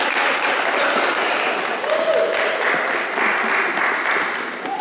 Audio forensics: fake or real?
real